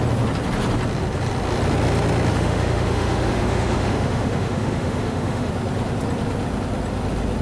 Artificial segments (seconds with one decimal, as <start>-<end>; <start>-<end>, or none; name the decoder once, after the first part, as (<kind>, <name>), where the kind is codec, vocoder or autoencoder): 2.3-5.5 (autoencoder, DAC-VAE)